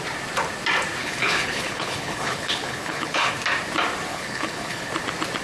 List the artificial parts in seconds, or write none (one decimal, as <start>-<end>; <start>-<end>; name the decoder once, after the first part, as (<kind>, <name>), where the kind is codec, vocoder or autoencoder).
1.0-3.3 (codec, HILCodec); 4.1-4.9